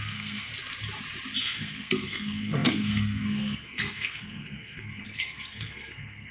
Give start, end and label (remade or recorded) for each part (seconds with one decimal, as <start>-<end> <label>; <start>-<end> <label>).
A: 0.0-0.5 remade; 0.5-1.4 recorded; 1.4-6.3 remade

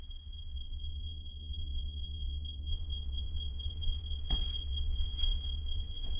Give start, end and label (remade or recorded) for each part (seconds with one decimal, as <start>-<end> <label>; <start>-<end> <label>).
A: 0.0-6.2 remade